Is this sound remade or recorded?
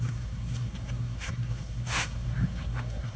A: remade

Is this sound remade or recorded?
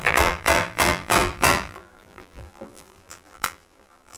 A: remade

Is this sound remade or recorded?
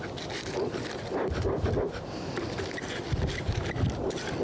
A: remade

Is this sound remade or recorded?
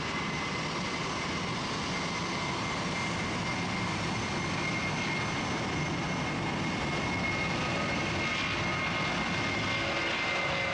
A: recorded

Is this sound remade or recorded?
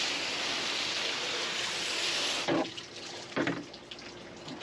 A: recorded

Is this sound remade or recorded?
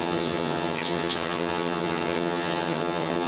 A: remade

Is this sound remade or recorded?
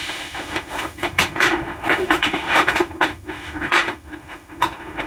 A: remade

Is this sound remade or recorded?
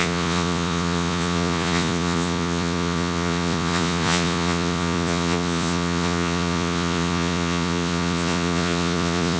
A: remade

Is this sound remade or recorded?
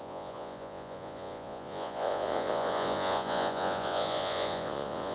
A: remade